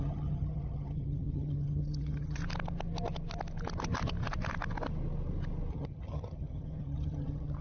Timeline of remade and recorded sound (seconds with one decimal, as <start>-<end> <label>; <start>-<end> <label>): 0.0-2.4 remade; 2.4-5.7 recorded; 5.7-7.6 remade